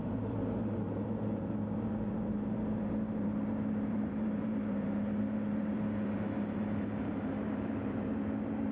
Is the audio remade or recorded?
remade